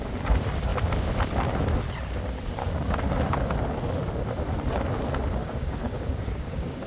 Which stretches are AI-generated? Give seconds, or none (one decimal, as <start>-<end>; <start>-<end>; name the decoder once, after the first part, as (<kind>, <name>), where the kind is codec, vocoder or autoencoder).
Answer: 2.6-3.1 (codec, DAC); 5.4-6.9

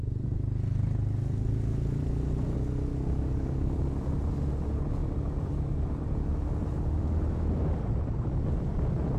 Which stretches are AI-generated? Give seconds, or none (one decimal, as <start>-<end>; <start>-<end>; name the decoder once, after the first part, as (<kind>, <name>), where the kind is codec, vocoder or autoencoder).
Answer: 2.9-3.8 (codec, DAC)

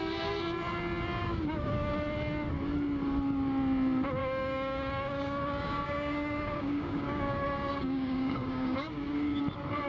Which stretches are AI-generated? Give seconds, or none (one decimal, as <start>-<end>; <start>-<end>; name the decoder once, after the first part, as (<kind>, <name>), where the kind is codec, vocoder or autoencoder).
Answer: 1.2-1.9 (codec, DAC); 4.2-9.4

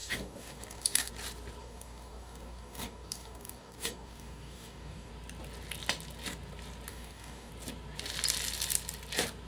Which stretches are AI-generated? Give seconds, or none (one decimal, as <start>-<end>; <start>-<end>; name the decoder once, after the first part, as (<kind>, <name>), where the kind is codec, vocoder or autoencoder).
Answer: 0.0-1.1 (codec, DAC); 1.6-5.1; 6.9-7.5

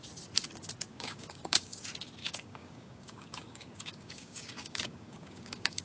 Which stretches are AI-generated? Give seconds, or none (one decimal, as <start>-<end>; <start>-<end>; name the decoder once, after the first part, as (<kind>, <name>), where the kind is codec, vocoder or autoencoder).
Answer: 0.9-1.8 (codec, DAC); 2.2-5.8

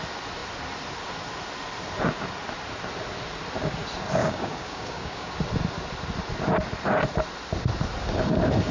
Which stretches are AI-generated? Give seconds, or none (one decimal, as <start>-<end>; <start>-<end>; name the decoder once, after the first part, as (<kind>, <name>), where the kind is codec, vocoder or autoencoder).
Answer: 4.2-5.4 (codec, DAC)